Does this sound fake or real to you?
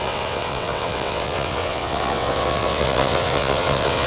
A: fake